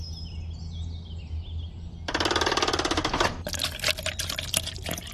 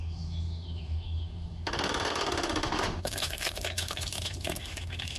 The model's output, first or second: second